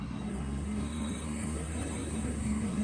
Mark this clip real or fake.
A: fake